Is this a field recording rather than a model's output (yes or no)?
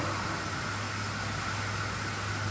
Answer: yes